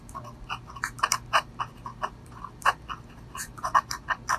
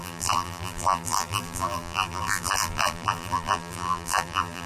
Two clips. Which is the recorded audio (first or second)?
first